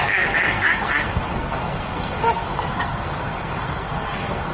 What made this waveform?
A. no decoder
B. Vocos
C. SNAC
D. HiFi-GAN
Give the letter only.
C